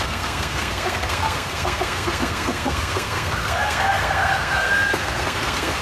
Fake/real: fake